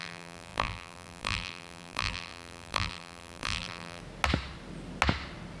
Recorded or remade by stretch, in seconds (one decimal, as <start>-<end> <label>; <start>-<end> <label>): 0.0-4.0 remade; 4.0-5.6 recorded